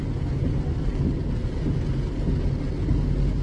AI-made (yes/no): no